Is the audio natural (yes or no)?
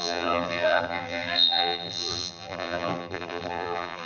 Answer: no